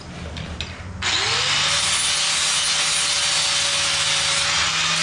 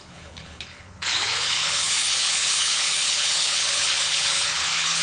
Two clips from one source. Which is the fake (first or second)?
second